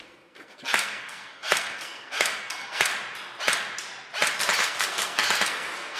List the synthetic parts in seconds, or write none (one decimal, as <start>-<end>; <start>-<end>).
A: 0.0-2.9; 4.6-6.0